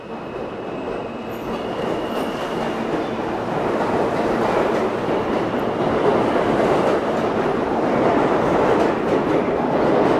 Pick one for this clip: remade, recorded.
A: recorded